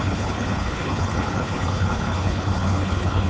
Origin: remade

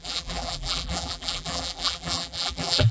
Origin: remade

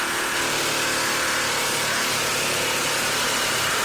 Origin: remade